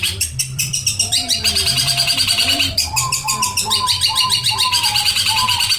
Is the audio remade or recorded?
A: remade